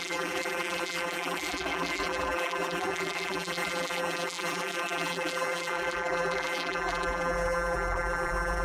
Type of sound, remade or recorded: remade